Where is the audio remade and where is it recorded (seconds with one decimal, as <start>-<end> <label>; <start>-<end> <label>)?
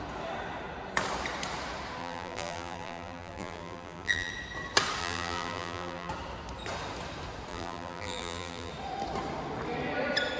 0.0-2.0 recorded; 2.0-4.3 remade; 4.3-5.0 recorded; 5.0-6.1 remade; 6.1-7.5 recorded; 7.5-8.7 remade; 8.7-10.4 recorded